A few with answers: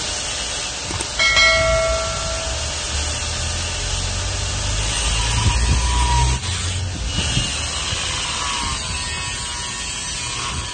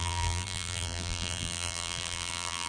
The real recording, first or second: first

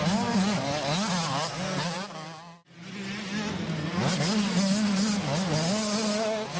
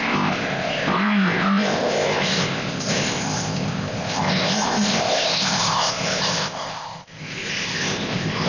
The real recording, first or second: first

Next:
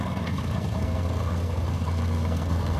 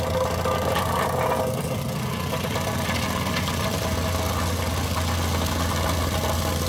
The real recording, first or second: second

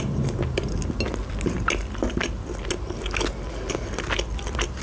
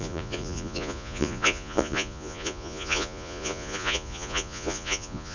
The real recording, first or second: first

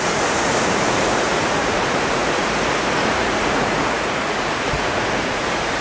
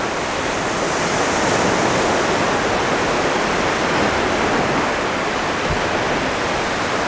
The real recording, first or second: second